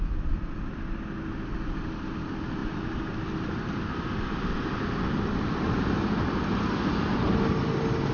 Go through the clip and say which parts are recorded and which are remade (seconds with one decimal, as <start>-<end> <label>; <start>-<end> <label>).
0.0-8.1 recorded